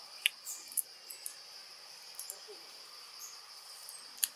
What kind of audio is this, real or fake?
real